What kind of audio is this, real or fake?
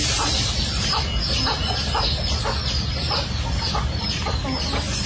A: real